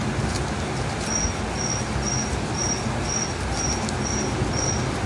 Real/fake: real